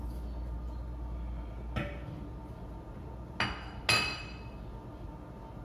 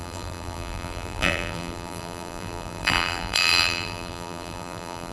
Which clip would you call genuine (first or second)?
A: first